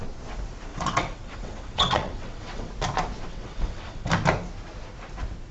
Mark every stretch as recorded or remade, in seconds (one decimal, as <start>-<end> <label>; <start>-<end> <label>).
0.0-0.7 recorded; 0.7-2.7 remade; 2.7-3.3 recorded; 3.3-4.1 remade; 4.1-5.5 recorded